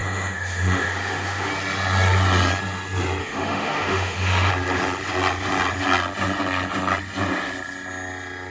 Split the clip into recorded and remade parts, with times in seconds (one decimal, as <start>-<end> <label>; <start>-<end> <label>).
0.0-1.5 remade; 1.5-3.2 recorded; 3.2-4.5 remade; 4.5-8.5 recorded